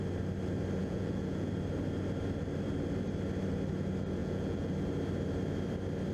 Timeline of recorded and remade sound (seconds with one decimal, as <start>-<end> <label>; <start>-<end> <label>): 0.0-0.8 recorded; 0.8-1.5 remade; 1.5-4.2 recorded; 4.2-4.7 remade; 4.7-6.1 recorded